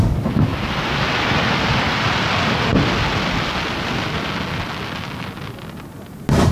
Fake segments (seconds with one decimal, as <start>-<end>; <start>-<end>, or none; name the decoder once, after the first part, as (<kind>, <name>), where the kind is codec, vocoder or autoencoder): none